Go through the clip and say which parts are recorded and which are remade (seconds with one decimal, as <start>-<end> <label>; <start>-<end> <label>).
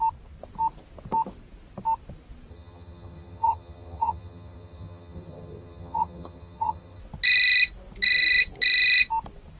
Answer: 0.0-2.5 recorded; 2.5-7.0 remade; 7.0-9.6 recorded